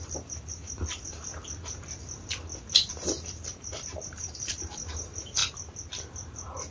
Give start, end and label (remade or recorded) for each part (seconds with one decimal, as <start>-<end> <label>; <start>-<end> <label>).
0.0-1.3 remade; 1.3-2.9 recorded; 2.9-5.4 remade; 5.4-6.7 recorded